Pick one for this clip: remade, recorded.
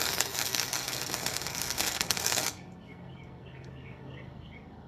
remade